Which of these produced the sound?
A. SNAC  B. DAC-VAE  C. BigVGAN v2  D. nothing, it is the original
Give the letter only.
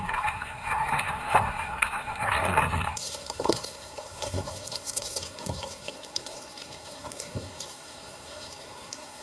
A